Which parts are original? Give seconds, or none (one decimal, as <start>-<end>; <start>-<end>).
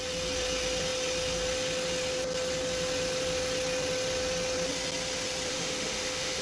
0.0-5.5